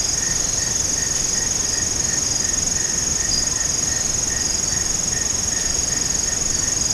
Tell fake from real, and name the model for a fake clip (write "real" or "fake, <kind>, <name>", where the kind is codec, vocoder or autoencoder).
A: real